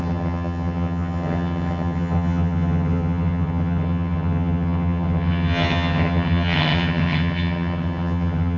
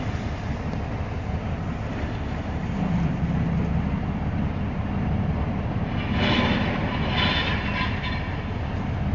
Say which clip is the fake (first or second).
first